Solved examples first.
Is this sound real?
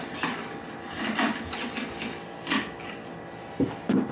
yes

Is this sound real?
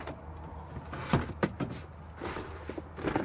yes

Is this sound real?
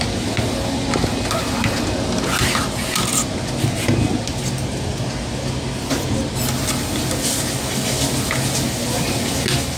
yes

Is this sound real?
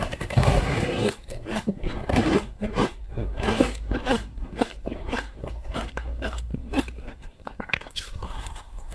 no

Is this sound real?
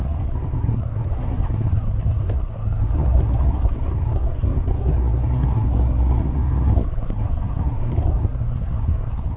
no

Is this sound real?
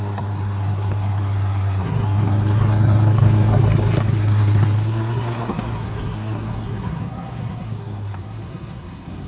no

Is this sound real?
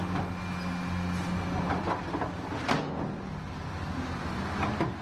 yes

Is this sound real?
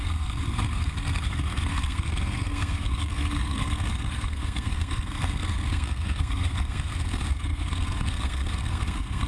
no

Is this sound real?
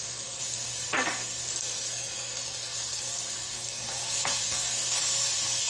no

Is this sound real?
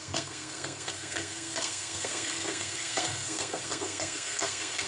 no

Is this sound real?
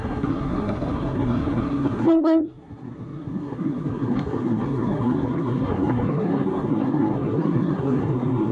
no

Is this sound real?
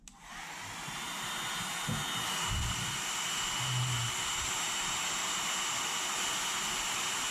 yes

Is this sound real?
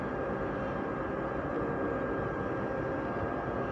yes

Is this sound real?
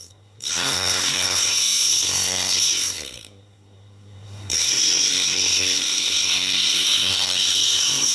no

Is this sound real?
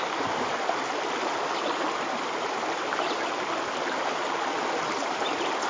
yes